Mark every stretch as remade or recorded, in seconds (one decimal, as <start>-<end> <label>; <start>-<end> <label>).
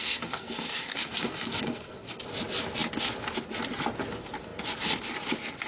0.0-2.2 remade; 2.2-5.7 recorded